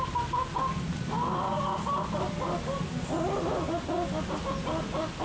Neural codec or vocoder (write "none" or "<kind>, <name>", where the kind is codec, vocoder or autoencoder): none